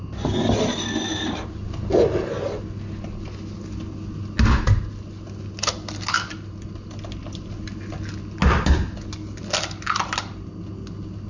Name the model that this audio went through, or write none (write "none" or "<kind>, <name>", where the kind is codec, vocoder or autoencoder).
none